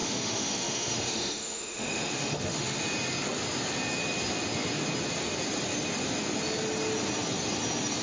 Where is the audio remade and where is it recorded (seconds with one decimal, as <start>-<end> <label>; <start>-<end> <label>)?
0.0-2.8 remade; 2.8-8.0 recorded